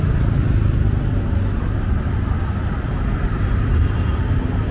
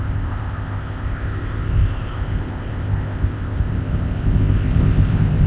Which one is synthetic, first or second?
second